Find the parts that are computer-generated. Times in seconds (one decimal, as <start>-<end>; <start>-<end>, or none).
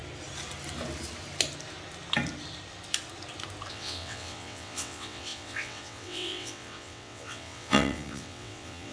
3.7-8.9